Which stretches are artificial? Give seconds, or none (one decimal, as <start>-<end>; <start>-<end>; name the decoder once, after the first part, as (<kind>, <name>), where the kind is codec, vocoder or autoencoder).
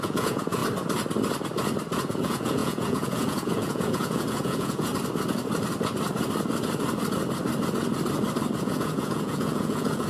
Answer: 0.0-0.6 (vocoder, Vocos); 2.0-4.9; 8.6-10.1